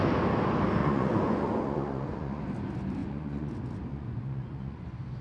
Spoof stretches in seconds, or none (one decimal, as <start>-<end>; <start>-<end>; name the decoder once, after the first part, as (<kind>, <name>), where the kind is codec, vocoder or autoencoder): 0.8-2.4 (vocoder, Vocos); 3.0-3.5; 3.9-4.8